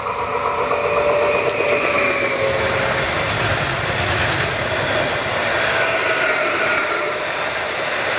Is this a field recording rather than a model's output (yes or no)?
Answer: yes